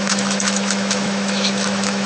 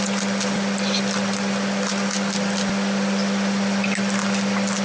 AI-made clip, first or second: first